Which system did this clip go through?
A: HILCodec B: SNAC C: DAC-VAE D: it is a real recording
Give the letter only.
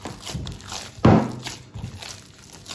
D